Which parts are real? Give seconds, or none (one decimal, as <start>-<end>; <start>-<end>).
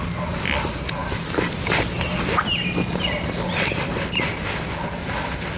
0.0-1.0; 4.4-5.6